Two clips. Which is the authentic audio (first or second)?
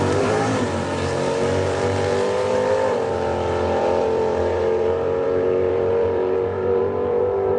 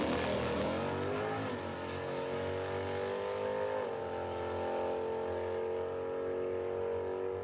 second